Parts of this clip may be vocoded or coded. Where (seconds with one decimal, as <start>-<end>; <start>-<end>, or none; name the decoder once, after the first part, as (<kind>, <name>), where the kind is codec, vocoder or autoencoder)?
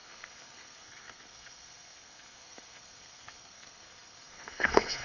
0.0-5.0 (codec, SNAC)